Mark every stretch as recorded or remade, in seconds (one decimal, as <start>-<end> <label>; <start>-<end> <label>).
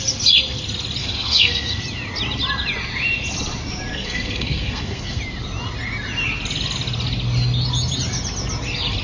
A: 0.0-1.0 recorded; 1.0-1.8 remade; 1.8-3.9 recorded; 3.9-5.2 remade; 5.2-9.0 recorded